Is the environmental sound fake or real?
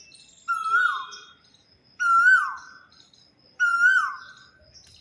real